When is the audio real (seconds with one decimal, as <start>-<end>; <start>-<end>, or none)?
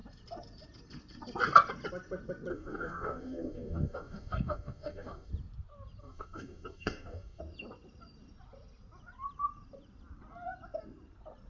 0.0-2.5; 5.3-6.0; 7.4-11.5